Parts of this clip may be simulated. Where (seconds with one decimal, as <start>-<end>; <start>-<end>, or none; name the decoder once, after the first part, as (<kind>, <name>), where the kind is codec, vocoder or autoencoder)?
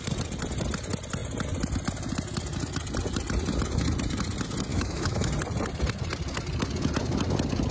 4.7-5.3 (autoencoder, DAC-VAE)